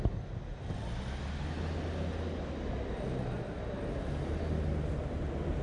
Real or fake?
real